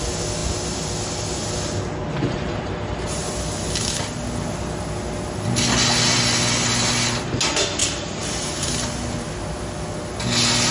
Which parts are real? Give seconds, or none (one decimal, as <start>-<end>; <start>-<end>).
0.0-2.0; 3.3-7.8; 8.7-10.7